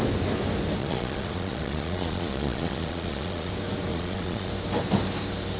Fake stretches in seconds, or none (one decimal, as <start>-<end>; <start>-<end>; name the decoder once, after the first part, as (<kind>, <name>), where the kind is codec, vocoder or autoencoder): 0.8-3.5 (vocoder, Vocos); 3.9-4.5